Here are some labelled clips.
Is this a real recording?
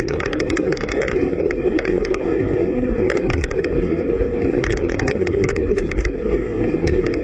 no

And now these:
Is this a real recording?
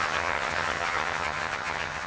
no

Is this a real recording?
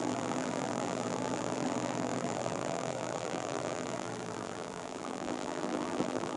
no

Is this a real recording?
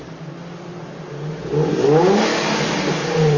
yes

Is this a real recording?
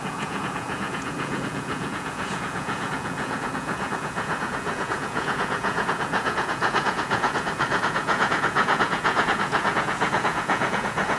no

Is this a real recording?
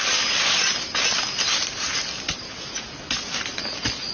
yes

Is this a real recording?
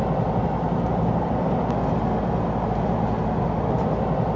yes